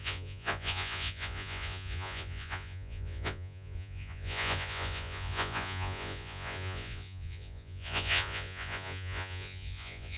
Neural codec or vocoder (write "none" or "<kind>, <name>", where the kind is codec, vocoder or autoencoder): vocoder, Vocos